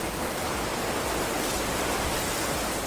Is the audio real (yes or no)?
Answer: yes